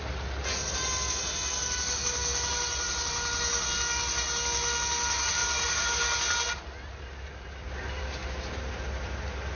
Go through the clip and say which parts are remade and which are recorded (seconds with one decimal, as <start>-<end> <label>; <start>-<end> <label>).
0.0-2.3 recorded; 2.3-2.9 remade; 2.9-5.4 recorded; 5.4-5.9 remade; 5.9-9.5 recorded